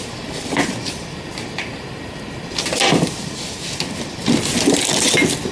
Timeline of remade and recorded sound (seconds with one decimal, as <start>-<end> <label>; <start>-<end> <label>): 0.0-5.5 recorded